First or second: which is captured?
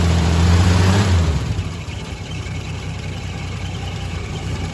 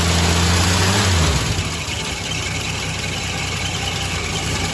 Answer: second